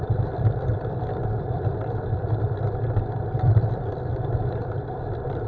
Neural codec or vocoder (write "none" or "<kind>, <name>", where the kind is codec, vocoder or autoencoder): vocoder, BigVGAN v2